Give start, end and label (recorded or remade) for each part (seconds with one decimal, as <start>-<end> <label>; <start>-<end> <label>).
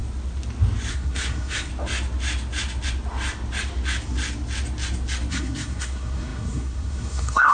0.0-0.9 recorded; 0.9-1.7 remade; 1.7-5.3 recorded; 5.3-7.5 remade